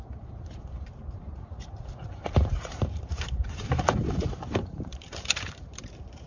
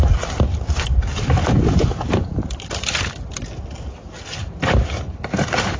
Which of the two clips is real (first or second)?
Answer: second